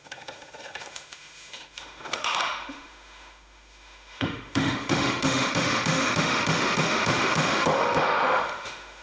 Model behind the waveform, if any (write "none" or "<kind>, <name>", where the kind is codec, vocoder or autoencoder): autoencoder, DAC-VAE